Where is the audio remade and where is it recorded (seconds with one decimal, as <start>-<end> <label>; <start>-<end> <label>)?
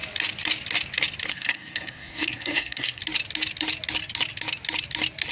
0.0-1.3 recorded; 1.3-3.0 remade; 3.0-5.3 recorded